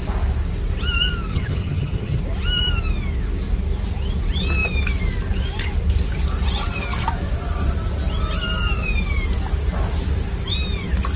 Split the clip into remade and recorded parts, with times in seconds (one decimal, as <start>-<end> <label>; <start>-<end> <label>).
0.0-1.3 recorded; 1.3-2.2 remade; 2.2-11.2 recorded